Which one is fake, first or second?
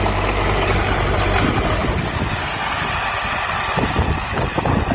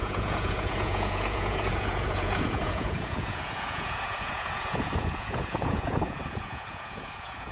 second